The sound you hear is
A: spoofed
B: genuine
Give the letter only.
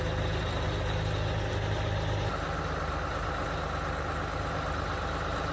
B